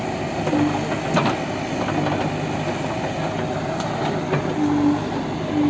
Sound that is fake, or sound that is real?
real